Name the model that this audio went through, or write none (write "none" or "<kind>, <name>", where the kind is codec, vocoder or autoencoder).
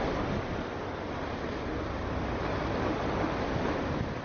none